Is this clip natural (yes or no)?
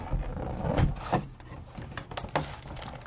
yes